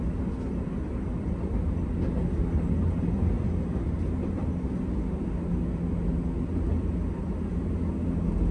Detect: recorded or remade recorded